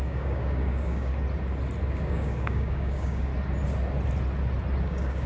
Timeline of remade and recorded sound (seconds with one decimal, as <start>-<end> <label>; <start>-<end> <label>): 0.0-1.1 remade; 1.1-1.9 recorded; 1.9-3.3 remade; 3.3-4.8 recorded; 4.8-5.3 remade